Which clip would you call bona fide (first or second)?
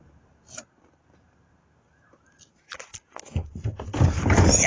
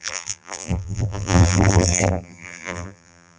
first